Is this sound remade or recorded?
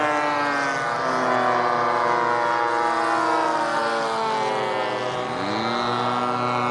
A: recorded